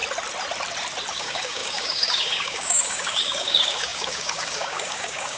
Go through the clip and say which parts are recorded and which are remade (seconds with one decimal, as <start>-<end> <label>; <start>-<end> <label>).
0.0-1.1 recorded; 1.1-5.4 remade